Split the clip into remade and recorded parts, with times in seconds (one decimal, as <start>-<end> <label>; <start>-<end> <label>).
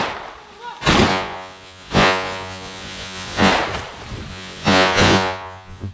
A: 0.0-1.1 recorded; 1.1-3.5 remade; 3.5-4.3 recorded; 4.3-5.9 remade